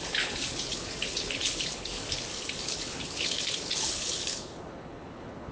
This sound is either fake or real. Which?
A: fake